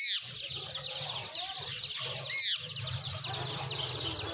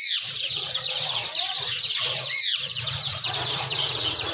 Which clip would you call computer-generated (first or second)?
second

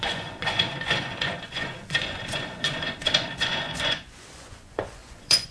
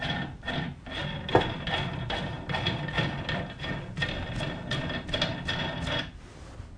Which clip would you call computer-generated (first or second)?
first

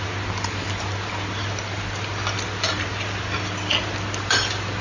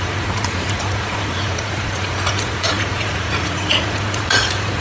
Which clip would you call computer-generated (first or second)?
second